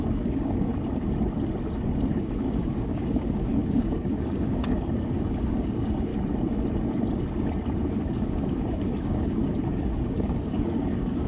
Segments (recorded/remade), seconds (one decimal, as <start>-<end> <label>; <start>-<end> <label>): 0.0-0.7 remade; 0.7-2.1 recorded; 2.1-6.1 remade; 6.1-8.2 recorded; 8.2-11.3 remade